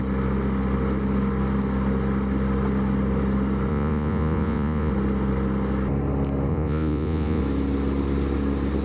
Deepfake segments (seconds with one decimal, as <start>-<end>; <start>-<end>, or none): 3.7-4.9; 6.5-7.4